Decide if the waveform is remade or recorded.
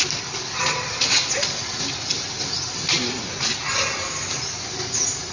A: recorded